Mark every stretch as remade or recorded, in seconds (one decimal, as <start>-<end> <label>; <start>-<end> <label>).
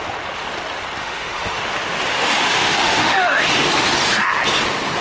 0.0-1.0 recorded; 1.0-1.6 remade; 1.6-2.1 recorded; 2.1-3.5 remade; 3.5-5.0 recorded